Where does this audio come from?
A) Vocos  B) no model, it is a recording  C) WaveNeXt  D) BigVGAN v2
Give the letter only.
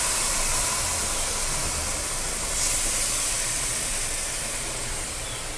B